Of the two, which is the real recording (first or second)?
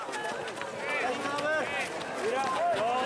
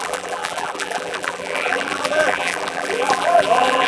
first